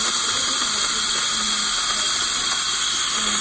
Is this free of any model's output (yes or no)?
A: yes